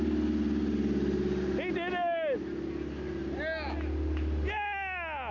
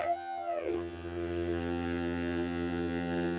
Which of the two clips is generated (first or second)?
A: second